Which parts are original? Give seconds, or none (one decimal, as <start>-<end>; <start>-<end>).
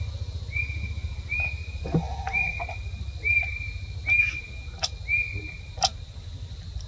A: 0.0-6.9